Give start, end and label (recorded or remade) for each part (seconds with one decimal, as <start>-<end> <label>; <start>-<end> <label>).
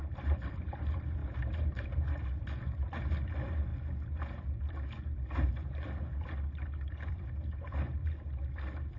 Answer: 0.0-1.2 remade; 1.2-2.9 recorded; 2.9-3.7 remade; 3.7-5.5 recorded; 5.5-8.0 remade; 8.0-9.0 recorded